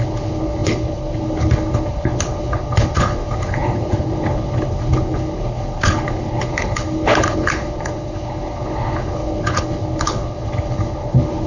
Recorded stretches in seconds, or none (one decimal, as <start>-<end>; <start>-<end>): none